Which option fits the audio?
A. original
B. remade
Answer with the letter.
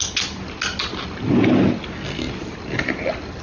A